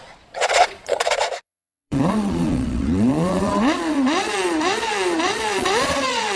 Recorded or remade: remade